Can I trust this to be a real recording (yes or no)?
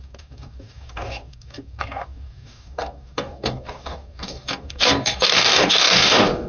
no